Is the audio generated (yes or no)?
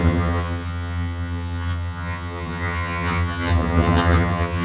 yes